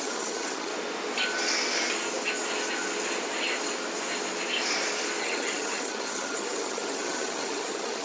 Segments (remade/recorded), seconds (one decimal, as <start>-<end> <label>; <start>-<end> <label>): 0.0-0.7 remade; 0.7-5.2 recorded; 5.2-8.0 remade